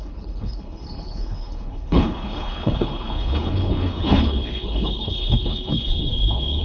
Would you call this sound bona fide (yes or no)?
no